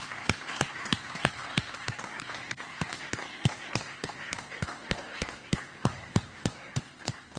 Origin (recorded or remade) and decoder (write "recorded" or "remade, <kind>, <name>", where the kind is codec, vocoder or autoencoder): remade, codec, SNAC